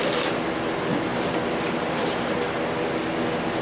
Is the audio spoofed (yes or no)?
no